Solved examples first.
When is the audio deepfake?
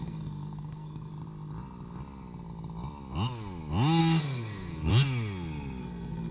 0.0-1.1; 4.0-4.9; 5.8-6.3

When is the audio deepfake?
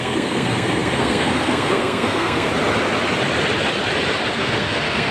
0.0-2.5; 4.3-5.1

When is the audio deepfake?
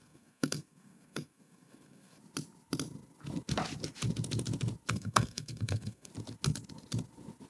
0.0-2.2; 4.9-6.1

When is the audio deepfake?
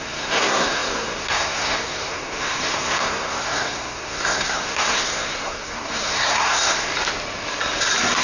0.0-6.9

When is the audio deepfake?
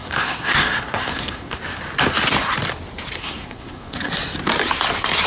0.0-1.6; 3.2-4.1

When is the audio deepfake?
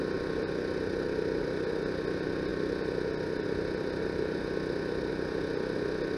none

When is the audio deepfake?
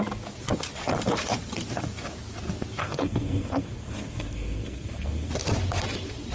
2.8-5.3